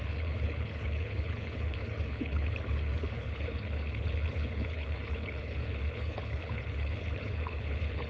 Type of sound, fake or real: fake